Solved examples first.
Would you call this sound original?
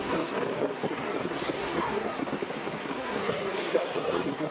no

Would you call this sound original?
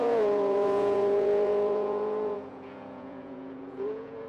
no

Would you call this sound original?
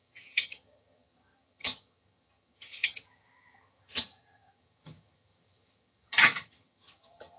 no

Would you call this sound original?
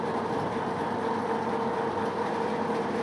yes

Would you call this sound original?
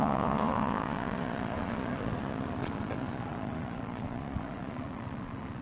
no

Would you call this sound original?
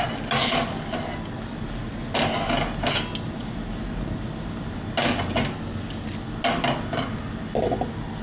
yes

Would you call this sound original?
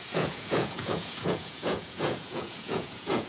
no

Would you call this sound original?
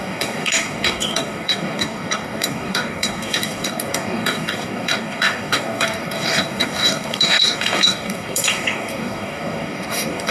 no